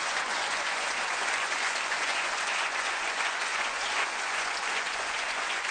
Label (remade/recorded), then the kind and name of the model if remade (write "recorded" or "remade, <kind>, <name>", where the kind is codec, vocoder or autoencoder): remade, vocoder, Vocos